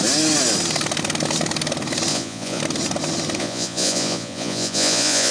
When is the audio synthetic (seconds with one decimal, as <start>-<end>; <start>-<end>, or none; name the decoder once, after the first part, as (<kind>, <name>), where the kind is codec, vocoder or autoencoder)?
2.1-2.6 (vocoder, Vocos); 3.4-5.3